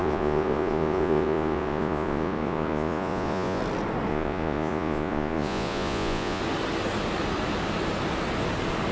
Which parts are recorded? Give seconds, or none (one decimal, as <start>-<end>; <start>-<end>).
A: 3.6-4.1; 6.4-8.9